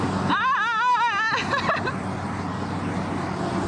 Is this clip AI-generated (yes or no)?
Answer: no